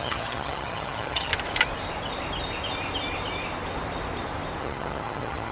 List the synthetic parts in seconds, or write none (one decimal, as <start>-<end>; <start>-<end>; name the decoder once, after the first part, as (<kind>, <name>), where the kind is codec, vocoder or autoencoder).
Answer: 0.0-1.3 (vocoder, HiFi-GAN); 4.6-5.5